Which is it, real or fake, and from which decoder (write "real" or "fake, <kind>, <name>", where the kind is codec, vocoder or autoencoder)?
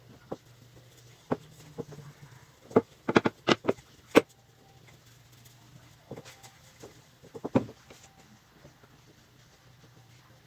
real